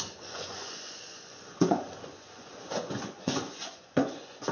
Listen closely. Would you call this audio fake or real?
fake